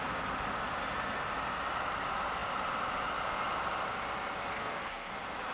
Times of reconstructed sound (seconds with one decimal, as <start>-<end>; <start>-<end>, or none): 4.5-5.1